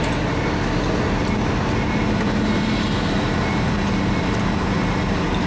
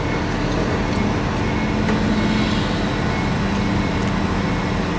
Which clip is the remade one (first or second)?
first